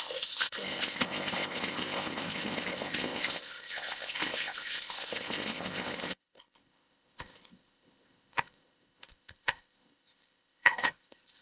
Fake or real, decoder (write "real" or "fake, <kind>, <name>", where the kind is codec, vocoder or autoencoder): fake, codec, ZipCodec